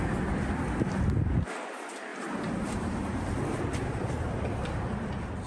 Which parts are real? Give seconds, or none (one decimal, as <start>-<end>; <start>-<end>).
0.0-5.5